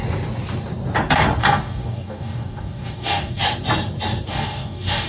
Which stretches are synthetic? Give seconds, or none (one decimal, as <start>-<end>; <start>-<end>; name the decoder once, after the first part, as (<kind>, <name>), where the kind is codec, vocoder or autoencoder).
1.4-3.4 (codec, DAC); 4.3-5.1